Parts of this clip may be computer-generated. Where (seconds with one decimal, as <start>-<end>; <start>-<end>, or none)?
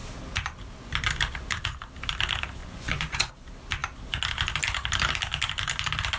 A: 2.6-3.3